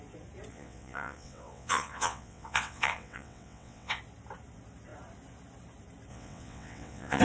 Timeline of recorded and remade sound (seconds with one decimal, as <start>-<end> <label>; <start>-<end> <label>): 0.0-0.5 recorded; 0.5-4.0 remade; 4.0-6.1 recorded; 6.1-7.2 remade